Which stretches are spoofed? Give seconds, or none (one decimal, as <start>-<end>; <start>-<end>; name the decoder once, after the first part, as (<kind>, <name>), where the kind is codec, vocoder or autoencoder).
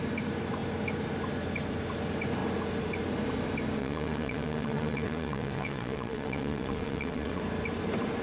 3.8-7.4 (vocoder, WaveNeXt)